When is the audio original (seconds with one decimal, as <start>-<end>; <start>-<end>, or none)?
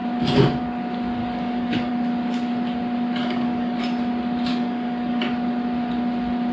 0.0-1.2; 1.9-3.2; 3.8-4.5; 5.2-6.5